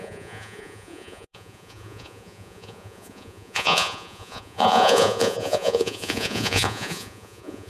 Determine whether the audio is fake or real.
fake